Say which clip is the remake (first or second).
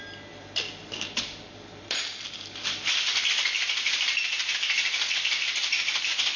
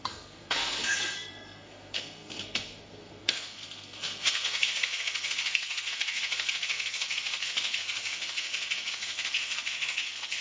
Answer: second